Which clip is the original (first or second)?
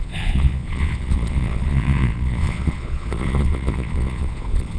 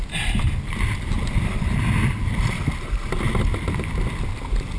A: second